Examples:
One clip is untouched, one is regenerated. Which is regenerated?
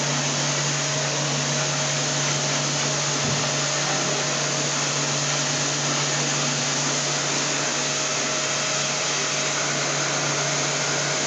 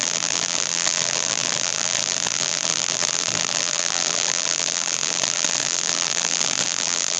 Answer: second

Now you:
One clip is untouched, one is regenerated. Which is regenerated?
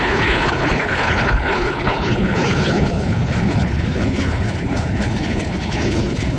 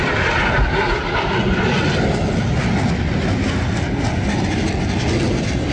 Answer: first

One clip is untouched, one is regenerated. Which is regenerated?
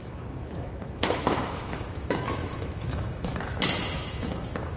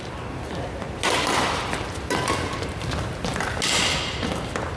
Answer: first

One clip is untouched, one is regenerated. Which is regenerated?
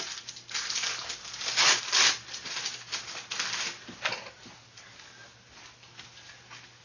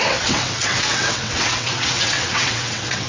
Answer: second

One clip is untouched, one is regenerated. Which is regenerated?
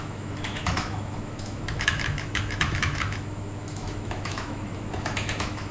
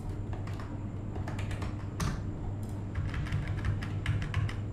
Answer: first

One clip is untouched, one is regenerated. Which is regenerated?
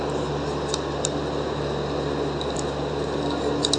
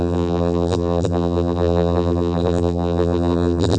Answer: second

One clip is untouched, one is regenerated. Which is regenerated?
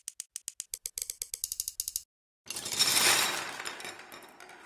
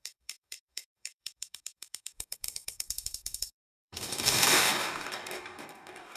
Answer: second